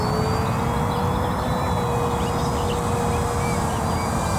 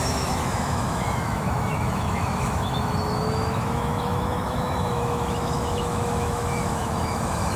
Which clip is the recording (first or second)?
first